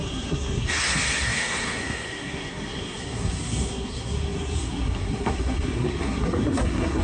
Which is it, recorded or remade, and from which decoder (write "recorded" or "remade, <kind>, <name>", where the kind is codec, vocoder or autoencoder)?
remade, codec, SNAC